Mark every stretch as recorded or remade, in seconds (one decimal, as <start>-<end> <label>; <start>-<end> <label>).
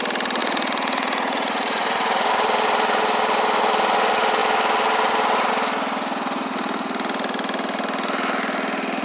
0.0-0.4 recorded; 0.4-2.3 remade; 2.3-9.0 recorded